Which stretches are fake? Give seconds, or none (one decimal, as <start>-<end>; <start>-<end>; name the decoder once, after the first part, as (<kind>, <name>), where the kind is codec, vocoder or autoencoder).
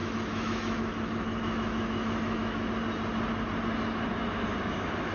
0.0-2.7 (autoencoder, DAC-VAE); 4.2-5.1